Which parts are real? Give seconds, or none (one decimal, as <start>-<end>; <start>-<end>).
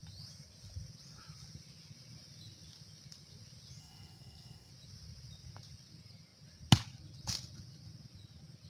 0.0-3.8; 4.7-8.7